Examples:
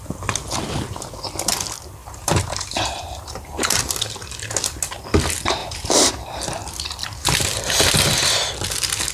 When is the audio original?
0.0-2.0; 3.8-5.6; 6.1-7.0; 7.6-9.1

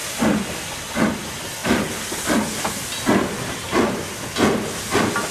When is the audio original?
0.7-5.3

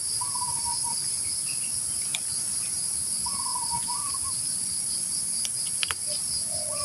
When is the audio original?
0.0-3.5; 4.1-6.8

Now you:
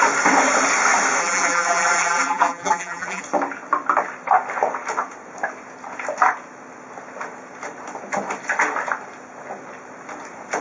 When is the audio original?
0.0-1.2; 3.2-10.6

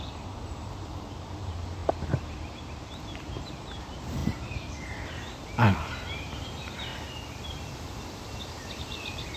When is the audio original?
6.9-8.8